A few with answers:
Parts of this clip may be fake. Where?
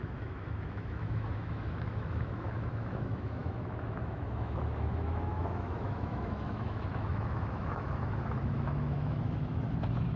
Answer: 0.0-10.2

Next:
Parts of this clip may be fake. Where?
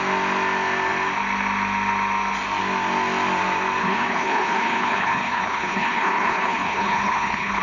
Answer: 3.8-7.6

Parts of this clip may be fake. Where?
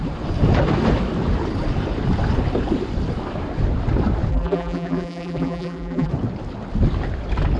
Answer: 4.3-6.1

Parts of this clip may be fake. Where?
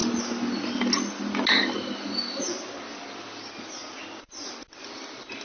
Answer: none